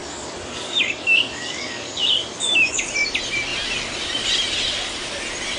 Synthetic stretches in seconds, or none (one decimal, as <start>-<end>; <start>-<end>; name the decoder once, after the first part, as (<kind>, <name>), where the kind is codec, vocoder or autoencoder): 0.0-2.8 (codec, DAC)